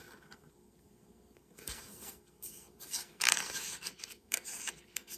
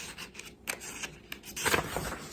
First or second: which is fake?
first